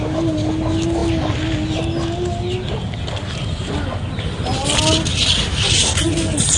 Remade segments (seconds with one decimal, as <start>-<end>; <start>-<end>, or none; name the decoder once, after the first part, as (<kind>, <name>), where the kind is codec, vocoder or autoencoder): none